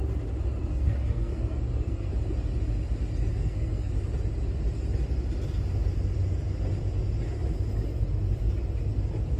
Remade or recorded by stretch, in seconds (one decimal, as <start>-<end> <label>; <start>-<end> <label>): 0.0-0.6 recorded; 0.6-2.1 remade; 2.1-3.3 recorded; 3.3-3.9 remade; 3.9-9.4 recorded

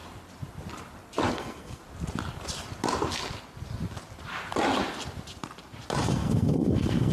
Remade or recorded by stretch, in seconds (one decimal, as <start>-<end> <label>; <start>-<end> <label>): 0.0-1.3 recorded; 1.3-1.8 remade; 1.8-6.0 recorded; 6.0-7.1 remade